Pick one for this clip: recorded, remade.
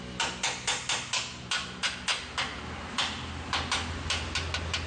recorded